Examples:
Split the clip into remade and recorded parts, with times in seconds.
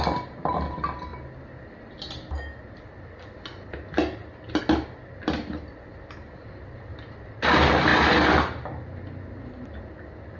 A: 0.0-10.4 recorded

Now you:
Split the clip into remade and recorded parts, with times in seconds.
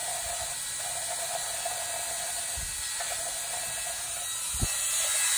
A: 0.0-5.4 recorded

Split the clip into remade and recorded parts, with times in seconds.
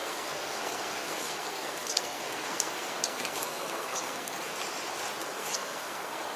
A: 0.0-4.5 remade; 4.5-5.2 recorded; 5.2-6.4 remade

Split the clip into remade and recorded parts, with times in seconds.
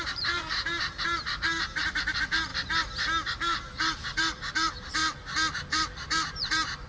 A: 0.0-2.5 remade; 2.5-3.3 recorded; 3.3-5.0 remade; 5.0-5.7 recorded; 5.7-6.9 remade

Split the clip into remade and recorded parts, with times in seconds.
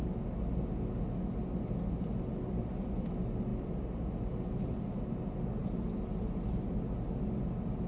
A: 0.0-7.9 recorded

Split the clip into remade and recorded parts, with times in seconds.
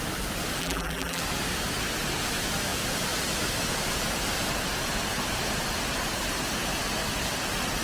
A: 0.0-0.6 recorded; 0.6-1.2 remade; 1.2-7.8 recorded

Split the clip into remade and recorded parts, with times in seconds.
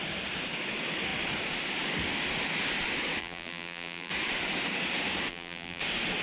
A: 0.0-3.2 recorded; 3.2-4.1 remade; 4.1-5.3 recorded; 5.3-5.8 remade; 5.8-6.2 recorded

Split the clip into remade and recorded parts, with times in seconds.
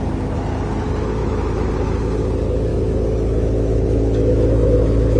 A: 0.0-1.2 recorded; 1.2-1.7 remade; 1.7-2.7 recorded; 2.7-5.2 remade